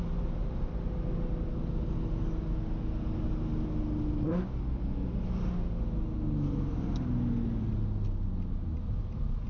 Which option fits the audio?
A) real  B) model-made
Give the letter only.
A